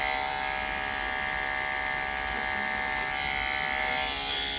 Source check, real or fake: real